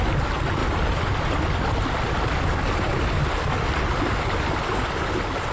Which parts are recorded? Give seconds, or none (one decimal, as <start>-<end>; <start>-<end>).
0.0-0.6; 1.9-5.5